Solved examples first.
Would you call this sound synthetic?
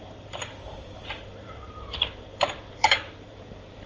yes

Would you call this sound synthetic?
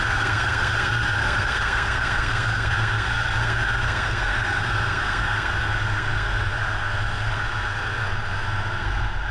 yes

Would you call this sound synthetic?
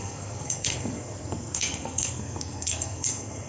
yes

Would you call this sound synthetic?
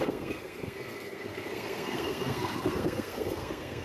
yes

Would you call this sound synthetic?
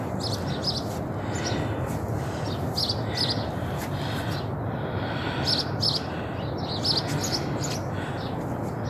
no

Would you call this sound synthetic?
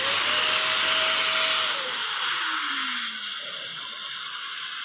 no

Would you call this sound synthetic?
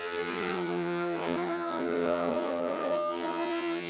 yes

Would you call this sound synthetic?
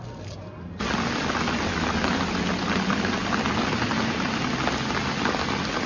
no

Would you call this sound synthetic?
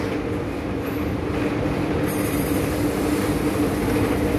no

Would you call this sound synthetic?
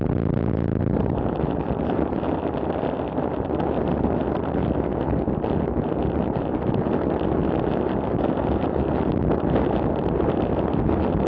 no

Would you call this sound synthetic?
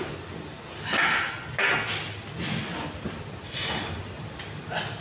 no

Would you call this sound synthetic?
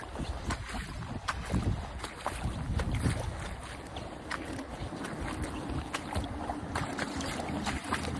no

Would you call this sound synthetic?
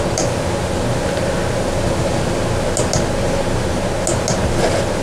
no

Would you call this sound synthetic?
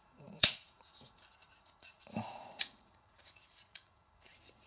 yes